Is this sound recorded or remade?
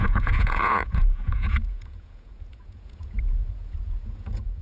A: remade